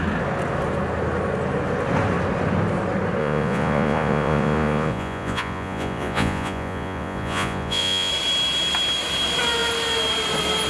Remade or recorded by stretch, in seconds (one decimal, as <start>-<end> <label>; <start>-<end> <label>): 0.0-3.2 recorded; 3.2-8.1 remade; 8.1-10.7 recorded